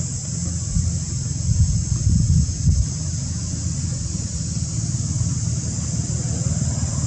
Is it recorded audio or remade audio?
recorded